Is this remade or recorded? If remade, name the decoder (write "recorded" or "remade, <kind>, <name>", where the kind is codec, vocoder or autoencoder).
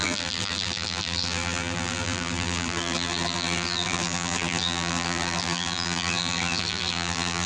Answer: remade, vocoder, BigVGAN v2